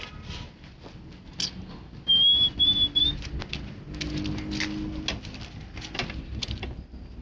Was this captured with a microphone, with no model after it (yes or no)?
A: yes